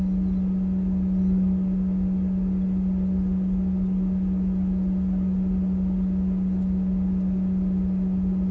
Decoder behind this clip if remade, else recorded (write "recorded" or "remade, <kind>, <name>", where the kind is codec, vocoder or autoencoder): recorded